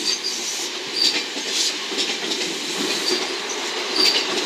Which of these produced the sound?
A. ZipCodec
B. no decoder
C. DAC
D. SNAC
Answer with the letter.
B